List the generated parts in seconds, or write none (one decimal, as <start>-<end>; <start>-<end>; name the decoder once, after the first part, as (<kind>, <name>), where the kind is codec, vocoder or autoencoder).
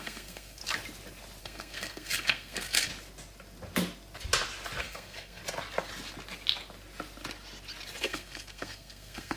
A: 0.0-0.6 (codec, SNAC); 1.4-2.9; 4.8-5.4; 8.0-9.4